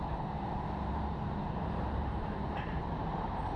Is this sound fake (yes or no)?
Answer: yes